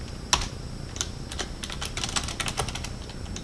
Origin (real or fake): real